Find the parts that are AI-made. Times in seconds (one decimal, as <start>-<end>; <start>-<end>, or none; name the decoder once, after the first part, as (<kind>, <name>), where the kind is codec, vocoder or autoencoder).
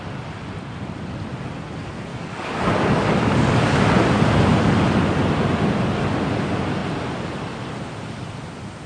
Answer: 2.1-3.8 (codec, DAC)